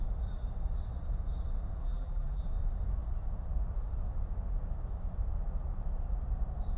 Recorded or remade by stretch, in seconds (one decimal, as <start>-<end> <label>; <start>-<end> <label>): 0.0-1.8 recorded; 1.8-2.4 remade; 2.4-6.8 recorded